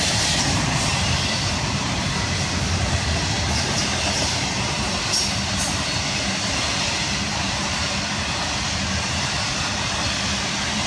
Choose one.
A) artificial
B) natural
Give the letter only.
A